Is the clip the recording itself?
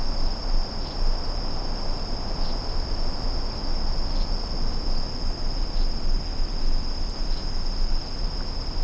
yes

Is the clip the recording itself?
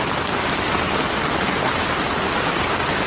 yes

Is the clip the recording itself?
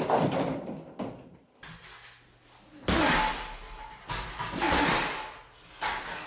yes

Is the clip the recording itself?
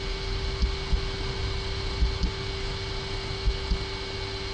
yes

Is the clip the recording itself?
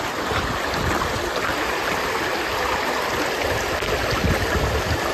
yes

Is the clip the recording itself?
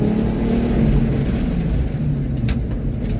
yes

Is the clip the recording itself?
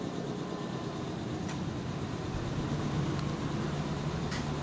yes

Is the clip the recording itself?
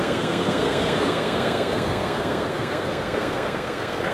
no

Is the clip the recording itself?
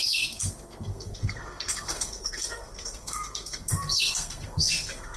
no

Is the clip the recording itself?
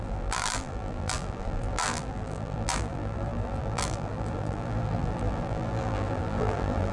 no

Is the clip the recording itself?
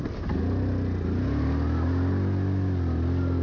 yes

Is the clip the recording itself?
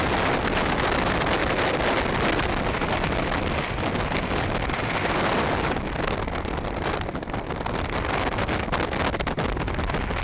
yes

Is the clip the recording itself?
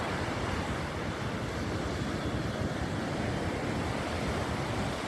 yes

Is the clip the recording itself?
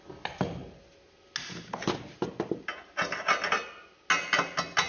yes